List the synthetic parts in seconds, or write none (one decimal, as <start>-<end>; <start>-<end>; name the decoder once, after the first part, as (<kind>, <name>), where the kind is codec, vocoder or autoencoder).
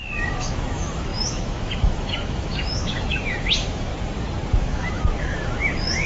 0.0-3.9 (autoencoder, DAC-VAE); 4.5-6.1